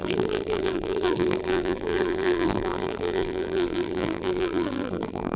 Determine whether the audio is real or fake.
fake